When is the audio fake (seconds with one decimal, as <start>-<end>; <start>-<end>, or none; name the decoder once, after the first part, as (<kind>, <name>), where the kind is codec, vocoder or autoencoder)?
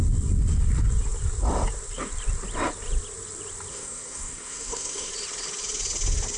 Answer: 3.7-5.1 (codec, SNAC)